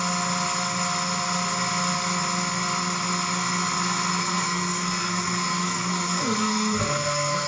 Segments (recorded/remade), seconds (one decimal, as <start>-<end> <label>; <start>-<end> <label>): 0.0-4.2 recorded; 4.2-7.5 remade